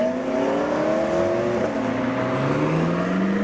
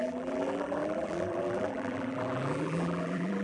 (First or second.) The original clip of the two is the first